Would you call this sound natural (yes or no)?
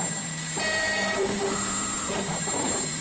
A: no